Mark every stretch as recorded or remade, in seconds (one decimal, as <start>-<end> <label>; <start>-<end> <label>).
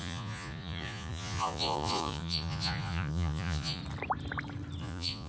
0.0-3.8 remade; 3.8-4.8 recorded; 4.8-5.3 remade